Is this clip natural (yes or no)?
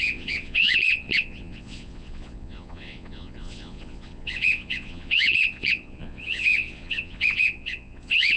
no